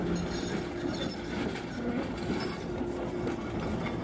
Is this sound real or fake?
real